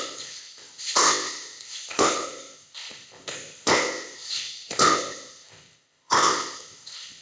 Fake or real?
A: fake